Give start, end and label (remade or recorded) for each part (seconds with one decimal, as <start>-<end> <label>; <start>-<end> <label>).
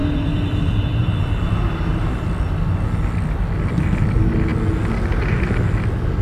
0.0-1.5 remade; 1.5-1.9 recorded; 1.9-2.7 remade; 2.7-6.2 recorded